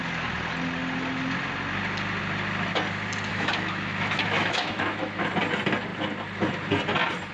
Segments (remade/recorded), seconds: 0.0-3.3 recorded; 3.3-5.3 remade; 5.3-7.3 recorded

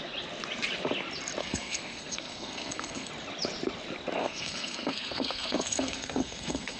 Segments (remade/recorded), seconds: 0.0-1.4 recorded; 1.4-3.1 remade; 3.1-4.2 recorded; 4.2-6.8 remade

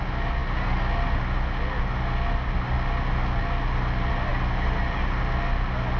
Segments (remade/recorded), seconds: 0.0-6.0 recorded